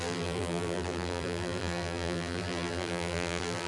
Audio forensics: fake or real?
fake